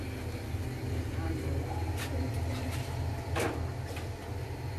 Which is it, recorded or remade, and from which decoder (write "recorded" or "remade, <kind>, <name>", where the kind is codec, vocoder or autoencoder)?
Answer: recorded